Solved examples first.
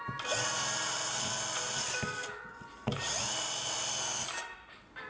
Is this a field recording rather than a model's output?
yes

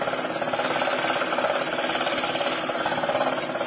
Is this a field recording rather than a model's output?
yes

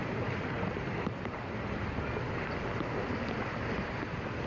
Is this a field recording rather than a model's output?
yes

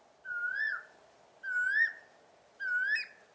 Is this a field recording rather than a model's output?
yes